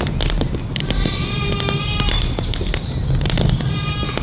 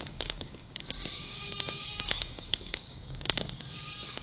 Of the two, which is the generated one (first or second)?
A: second